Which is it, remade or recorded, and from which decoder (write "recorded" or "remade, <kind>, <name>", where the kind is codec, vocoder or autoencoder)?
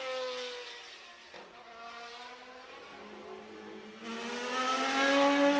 recorded